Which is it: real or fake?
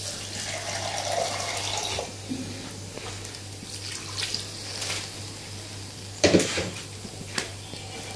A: real